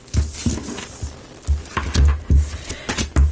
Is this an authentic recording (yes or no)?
yes